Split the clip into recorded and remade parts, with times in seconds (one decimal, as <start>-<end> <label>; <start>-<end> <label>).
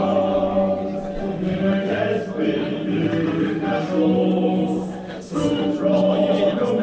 0.0-1.2 recorded; 1.2-2.0 remade; 2.0-2.9 recorded; 2.9-5.7 remade; 5.7-6.8 recorded